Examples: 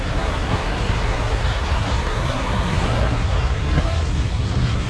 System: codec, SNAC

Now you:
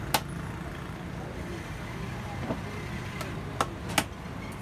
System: none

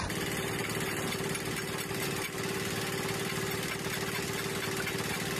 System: none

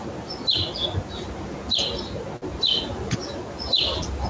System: none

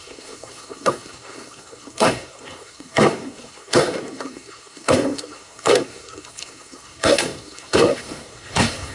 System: codec, SNAC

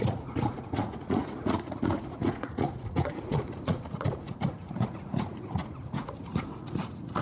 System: vocoder, Vocos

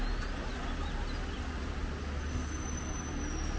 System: none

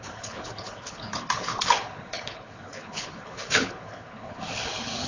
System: codec, HILCodec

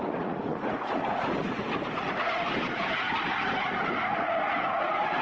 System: vocoder, Vocos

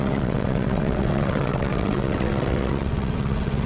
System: vocoder, WaveNeXt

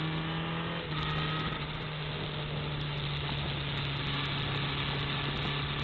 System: none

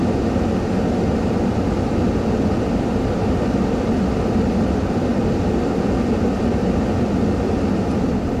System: none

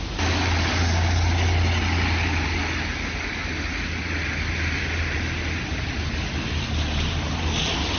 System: none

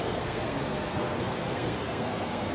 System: codec, SNAC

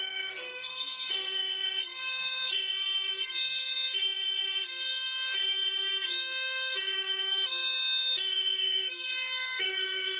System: codec, SNAC